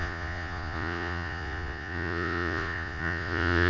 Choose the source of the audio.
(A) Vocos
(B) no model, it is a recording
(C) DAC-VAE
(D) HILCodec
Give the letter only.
A